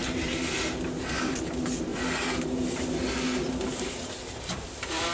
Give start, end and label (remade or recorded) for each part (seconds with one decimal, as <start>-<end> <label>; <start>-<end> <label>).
0.0-1.0 recorded; 1.0-1.9 remade; 1.9-4.5 recorded; 4.5-5.1 remade